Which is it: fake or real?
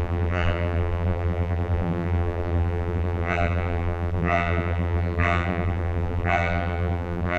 fake